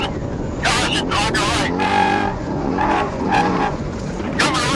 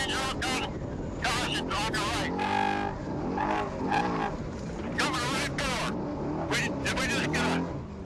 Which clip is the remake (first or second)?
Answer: first